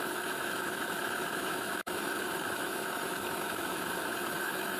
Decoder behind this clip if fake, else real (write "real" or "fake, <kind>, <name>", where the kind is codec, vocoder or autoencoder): fake, autoencoder, DAC-VAE